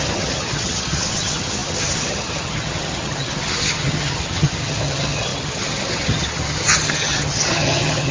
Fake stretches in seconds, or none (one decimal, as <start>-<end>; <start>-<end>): 0.0-8.1